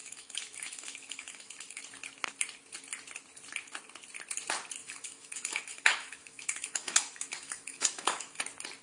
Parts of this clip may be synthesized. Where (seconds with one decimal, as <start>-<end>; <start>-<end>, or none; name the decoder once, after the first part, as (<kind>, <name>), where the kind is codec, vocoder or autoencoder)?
0.0-1.8 (autoencoder, DAC-VAE); 4.8-8.4